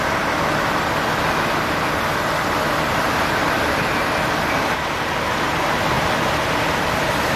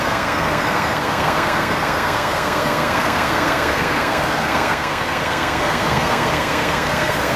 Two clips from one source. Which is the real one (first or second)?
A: first